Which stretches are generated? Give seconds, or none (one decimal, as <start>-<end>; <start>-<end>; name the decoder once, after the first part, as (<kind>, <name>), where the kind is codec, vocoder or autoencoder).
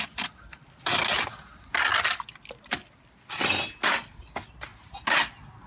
none